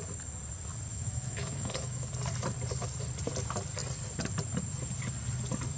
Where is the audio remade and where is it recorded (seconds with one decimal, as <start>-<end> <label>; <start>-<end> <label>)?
0.0-0.9 recorded; 0.9-2.1 remade; 2.1-5.8 recorded